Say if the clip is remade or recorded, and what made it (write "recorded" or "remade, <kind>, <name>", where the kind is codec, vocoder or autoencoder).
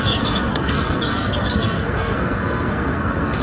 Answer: remade, codec, SNAC